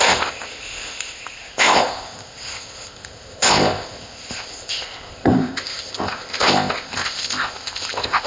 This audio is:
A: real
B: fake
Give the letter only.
B